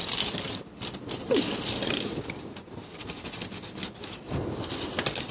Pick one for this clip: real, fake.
real